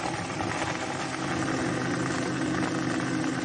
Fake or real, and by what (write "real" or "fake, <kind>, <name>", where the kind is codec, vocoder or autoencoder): real